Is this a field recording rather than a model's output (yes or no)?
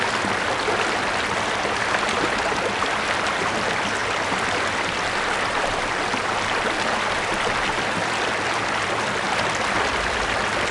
yes